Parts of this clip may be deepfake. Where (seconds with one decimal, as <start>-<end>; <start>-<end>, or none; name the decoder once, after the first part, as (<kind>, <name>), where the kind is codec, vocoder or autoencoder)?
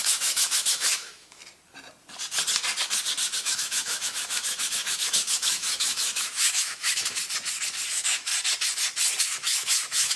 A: 0.0-1.4 (autoencoder, DAC-VAE); 3.4-7.2; 7.9-8.3; 9.2-10.2